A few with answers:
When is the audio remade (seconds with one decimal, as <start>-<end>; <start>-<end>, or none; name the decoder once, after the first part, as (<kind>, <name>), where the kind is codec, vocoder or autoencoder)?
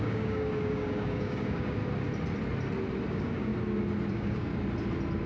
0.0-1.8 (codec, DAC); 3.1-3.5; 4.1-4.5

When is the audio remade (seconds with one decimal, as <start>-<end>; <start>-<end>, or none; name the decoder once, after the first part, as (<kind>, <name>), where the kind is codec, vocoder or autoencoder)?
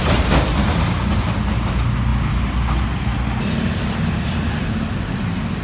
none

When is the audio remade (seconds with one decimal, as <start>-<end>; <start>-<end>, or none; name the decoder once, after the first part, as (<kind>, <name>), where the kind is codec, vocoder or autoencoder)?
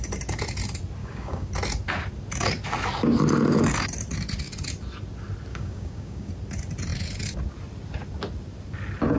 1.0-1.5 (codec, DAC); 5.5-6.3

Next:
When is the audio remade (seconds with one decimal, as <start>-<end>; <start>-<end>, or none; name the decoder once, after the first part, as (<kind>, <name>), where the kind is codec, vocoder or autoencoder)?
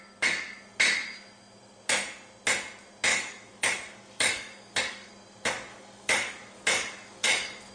3.1-5.1 (codec, DAC); 5.7-7.7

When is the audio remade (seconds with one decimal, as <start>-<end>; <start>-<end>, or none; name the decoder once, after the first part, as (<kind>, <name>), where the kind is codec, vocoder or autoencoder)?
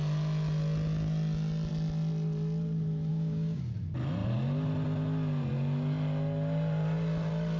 3.1-3.6 (codec, DAC)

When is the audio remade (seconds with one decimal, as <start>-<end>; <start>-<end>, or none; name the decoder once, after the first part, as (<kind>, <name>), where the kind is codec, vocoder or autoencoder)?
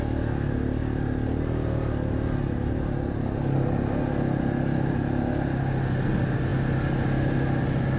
none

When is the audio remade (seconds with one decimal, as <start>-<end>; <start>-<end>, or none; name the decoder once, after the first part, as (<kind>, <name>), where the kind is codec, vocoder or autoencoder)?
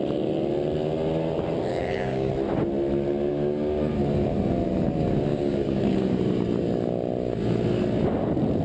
1.7-2.3 (codec, DAC); 3.3-3.9; 5.3-6.2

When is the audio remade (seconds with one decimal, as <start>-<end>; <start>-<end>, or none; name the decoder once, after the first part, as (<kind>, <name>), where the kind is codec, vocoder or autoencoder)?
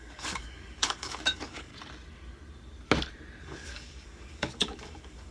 0.0-1.7 (codec, DAC); 3.4-5.3